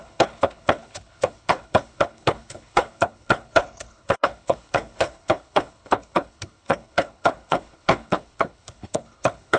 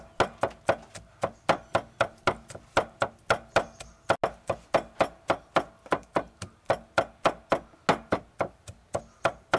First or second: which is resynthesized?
first